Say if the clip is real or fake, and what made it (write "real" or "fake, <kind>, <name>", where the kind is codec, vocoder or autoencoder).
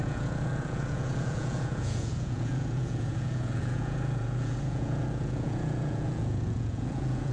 fake, vocoder, Vocos